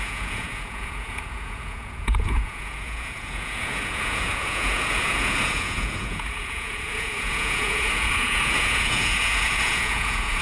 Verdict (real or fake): fake